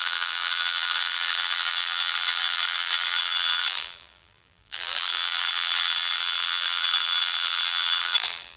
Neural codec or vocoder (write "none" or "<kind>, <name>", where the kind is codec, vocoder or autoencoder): vocoder, BigVGAN v2